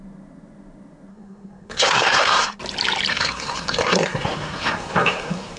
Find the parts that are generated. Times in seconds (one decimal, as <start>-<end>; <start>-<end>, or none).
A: 1.1-2.6; 3.1-5.6